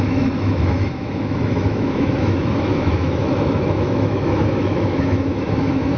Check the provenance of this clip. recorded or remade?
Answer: remade